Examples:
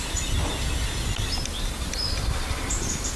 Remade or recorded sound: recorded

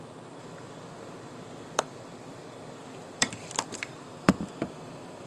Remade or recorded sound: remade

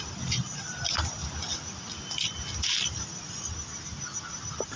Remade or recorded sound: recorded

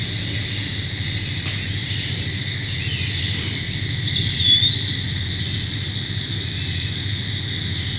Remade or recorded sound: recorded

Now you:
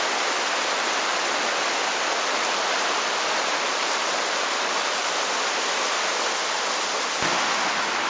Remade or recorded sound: recorded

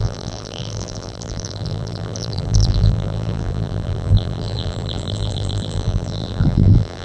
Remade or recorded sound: remade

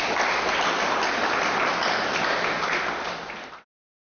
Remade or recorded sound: recorded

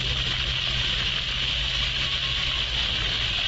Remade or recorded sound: recorded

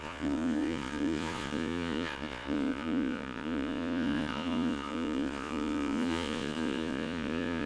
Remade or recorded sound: remade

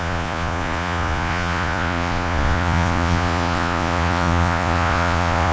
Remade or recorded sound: remade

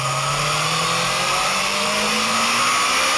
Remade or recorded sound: recorded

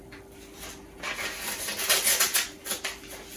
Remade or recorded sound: recorded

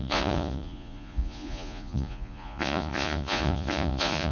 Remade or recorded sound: remade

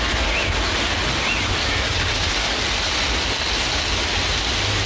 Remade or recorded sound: recorded